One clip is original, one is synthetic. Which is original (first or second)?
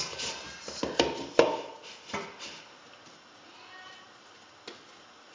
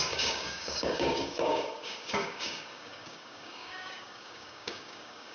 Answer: first